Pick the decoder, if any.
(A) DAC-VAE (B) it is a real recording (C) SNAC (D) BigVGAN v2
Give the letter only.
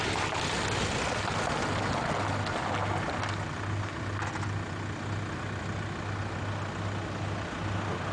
B